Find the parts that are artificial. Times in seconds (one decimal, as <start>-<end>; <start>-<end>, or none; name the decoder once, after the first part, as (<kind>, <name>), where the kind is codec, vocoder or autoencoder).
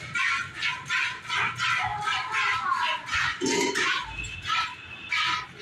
none